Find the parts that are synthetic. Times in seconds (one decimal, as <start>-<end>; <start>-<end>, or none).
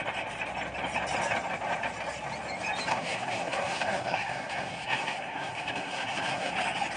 2.9-6.5